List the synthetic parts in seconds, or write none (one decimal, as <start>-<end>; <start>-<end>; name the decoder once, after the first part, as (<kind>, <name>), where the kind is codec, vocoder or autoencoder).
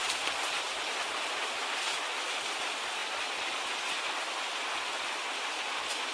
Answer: 0.0-1.8 (vocoder, BigVGAN v2)